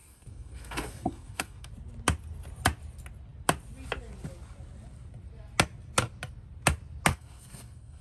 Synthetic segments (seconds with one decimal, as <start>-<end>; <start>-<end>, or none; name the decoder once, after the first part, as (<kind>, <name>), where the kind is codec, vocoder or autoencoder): 0.0-1.7 (codec, SNAC); 7.1-8.0